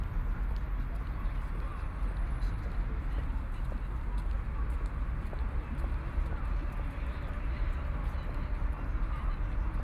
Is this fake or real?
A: real